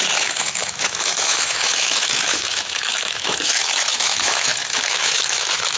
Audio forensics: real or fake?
fake